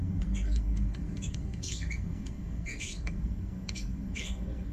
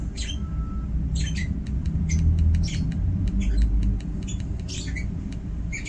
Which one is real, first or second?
second